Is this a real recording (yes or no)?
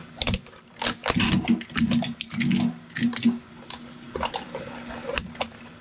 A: yes